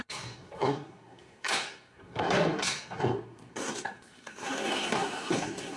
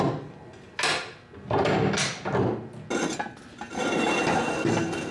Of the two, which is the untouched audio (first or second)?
second